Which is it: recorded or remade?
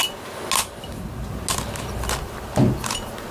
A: recorded